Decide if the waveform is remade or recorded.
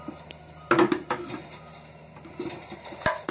recorded